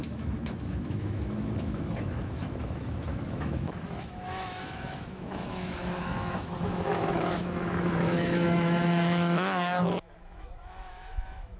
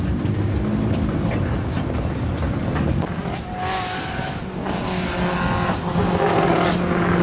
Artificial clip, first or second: first